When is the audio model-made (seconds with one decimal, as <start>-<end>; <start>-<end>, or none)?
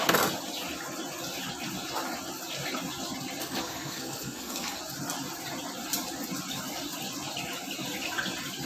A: 3.4-4.8